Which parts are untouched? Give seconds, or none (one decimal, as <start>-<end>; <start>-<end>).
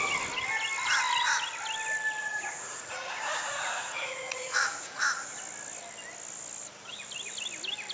0.0-2.2; 5.4-7.9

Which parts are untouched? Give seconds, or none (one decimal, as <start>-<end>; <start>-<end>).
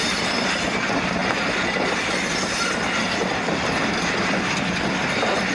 0.0-5.5